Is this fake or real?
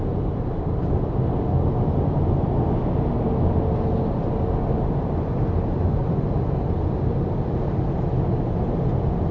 real